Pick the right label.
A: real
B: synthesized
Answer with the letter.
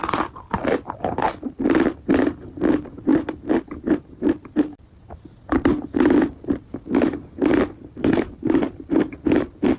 A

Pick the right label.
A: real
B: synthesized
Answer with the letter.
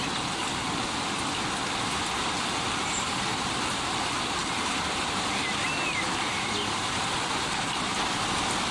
A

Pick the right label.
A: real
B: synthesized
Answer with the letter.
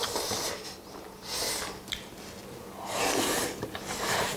A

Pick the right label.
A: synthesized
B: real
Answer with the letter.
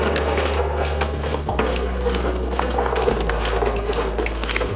A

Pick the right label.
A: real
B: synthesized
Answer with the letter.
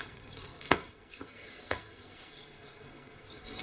B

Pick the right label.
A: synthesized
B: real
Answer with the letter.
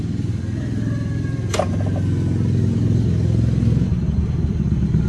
B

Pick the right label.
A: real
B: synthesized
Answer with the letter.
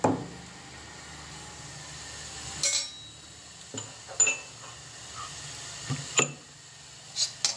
A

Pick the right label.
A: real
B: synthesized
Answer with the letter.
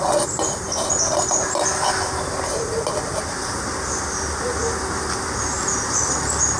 A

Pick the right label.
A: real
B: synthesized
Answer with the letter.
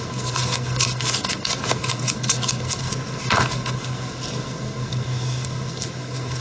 B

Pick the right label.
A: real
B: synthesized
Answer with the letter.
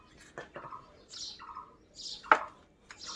A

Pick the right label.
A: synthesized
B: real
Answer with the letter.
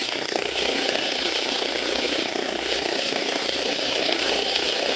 A